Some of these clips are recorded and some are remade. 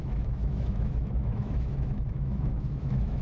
remade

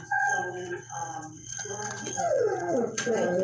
remade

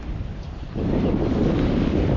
recorded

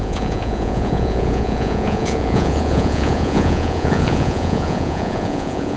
remade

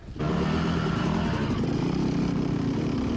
recorded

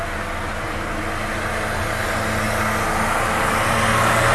recorded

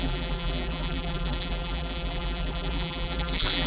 remade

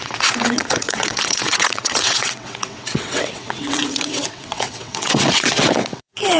remade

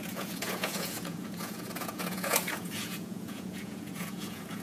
remade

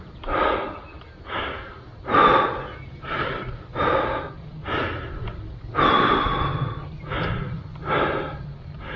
recorded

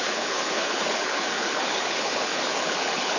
remade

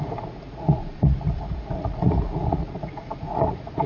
remade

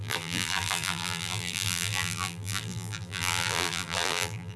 remade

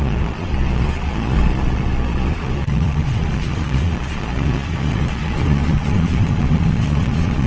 remade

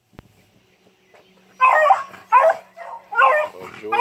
recorded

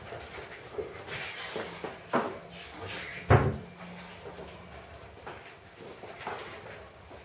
recorded